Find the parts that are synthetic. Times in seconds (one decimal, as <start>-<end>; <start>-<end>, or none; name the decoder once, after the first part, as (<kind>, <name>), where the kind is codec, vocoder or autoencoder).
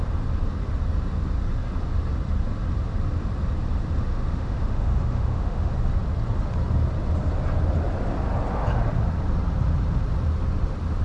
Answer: 4.1-5.7 (autoencoder, DAC-VAE)